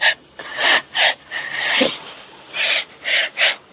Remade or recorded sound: remade